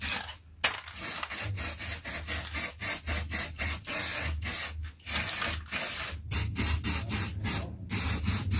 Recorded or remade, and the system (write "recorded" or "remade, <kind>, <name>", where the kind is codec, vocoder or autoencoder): recorded